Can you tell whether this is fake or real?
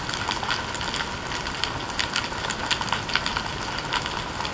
real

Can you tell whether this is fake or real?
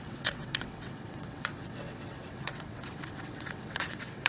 fake